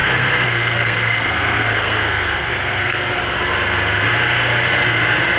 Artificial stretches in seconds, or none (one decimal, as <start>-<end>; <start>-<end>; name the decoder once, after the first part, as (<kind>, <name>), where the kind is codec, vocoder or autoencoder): 0.0-3.2 (codec, SNAC)